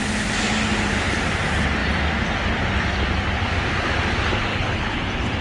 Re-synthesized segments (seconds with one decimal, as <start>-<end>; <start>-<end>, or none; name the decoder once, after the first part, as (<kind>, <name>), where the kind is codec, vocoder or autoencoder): 4.5-5.0 (codec, HILCodec)